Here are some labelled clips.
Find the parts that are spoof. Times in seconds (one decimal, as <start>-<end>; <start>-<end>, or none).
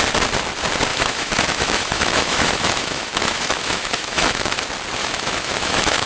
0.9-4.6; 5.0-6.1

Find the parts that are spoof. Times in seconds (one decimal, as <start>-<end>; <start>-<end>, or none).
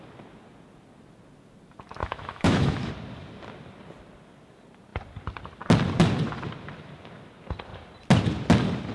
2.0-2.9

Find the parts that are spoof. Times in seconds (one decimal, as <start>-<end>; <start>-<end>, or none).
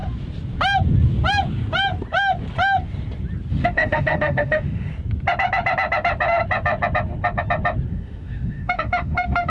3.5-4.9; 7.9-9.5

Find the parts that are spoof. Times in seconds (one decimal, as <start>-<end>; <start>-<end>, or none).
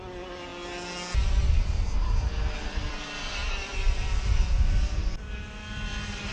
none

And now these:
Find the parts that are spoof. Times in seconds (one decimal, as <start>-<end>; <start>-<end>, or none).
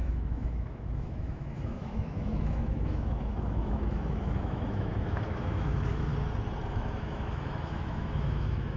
0.0-6.1; 6.7-8.8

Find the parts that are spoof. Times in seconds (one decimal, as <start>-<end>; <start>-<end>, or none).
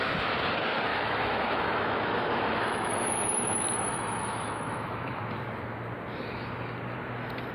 0.9-2.9; 3.9-5.2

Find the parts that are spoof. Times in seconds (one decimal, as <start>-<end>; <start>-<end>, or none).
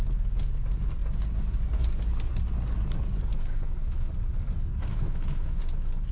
3.3-4.1; 4.9-5.6